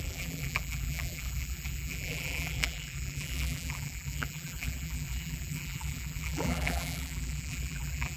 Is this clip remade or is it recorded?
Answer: remade